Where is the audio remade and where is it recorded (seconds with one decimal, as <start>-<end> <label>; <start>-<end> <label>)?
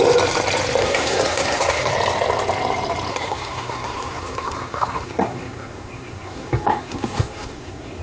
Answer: 0.0-0.8 recorded; 0.8-1.9 remade; 1.9-3.1 recorded; 3.1-8.0 remade